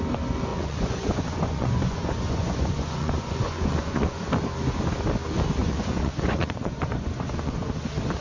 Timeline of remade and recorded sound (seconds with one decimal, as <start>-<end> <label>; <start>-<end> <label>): 0.0-0.5 recorded; 0.5-4.3 remade; 4.3-5.6 recorded; 5.6-7.7 remade; 7.7-8.2 recorded